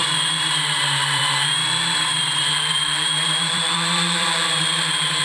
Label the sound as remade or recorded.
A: remade